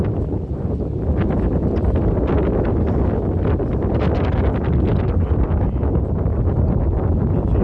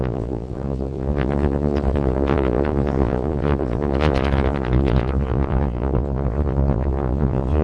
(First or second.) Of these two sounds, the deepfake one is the second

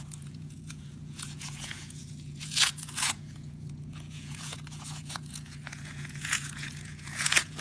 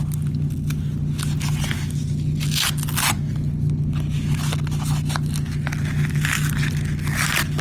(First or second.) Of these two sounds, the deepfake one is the first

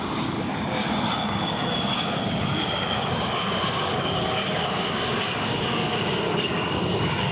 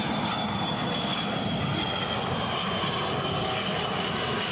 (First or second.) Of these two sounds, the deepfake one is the first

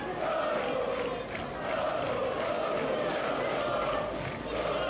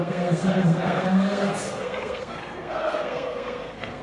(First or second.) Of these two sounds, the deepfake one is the second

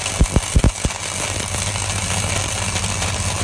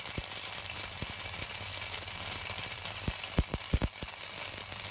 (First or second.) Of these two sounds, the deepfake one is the second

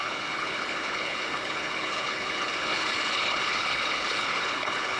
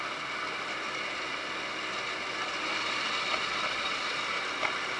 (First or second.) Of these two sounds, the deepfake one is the first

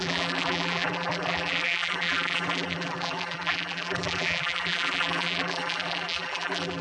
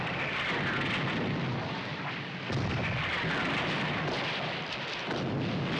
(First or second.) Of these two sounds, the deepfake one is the first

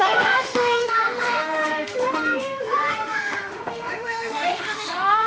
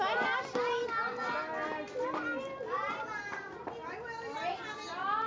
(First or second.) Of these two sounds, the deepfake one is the first